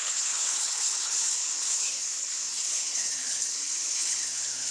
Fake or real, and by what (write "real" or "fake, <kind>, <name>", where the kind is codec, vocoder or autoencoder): fake, codec, HILCodec